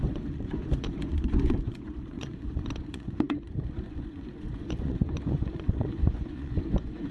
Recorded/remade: remade